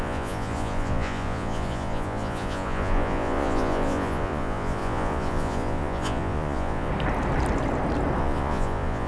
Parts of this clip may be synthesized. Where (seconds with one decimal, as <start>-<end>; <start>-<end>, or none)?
0.0-6.9; 8.2-9.1